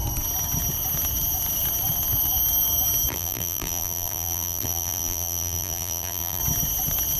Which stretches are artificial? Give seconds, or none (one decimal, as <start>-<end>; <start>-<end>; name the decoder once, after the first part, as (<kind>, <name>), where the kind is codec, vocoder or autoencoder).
3.1-6.4 (vocoder, BigVGAN v2)